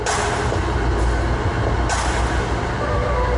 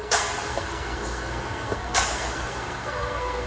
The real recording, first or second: first